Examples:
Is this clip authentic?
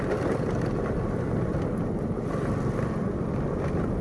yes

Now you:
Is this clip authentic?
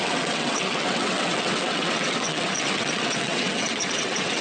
no